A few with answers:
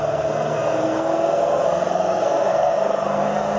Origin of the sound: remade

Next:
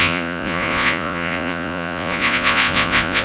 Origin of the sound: remade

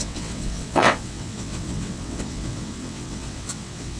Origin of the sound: remade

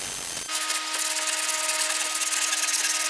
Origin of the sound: recorded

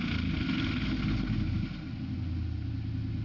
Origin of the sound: recorded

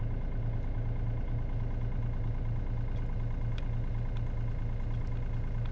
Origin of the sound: recorded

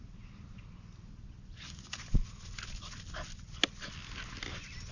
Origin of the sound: recorded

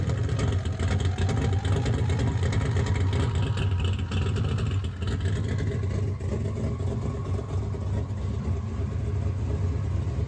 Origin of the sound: recorded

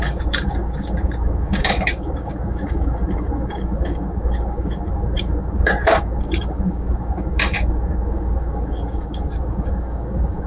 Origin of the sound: remade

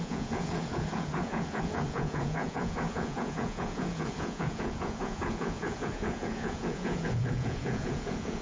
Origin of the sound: remade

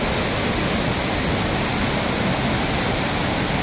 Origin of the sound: recorded